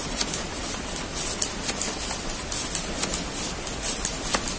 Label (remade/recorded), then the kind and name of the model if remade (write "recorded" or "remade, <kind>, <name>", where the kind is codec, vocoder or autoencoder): recorded